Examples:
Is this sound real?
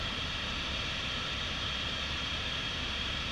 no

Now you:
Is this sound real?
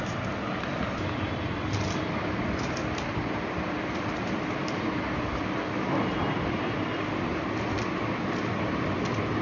no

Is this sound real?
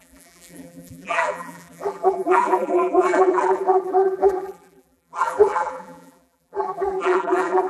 no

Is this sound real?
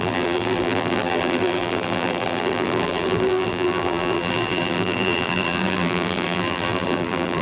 no